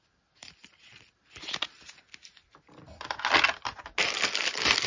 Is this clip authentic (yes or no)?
yes